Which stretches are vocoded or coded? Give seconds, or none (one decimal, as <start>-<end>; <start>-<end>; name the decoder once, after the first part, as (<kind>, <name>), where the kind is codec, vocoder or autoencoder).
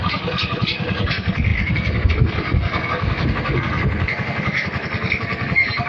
0.0-5.9 (codec, SNAC)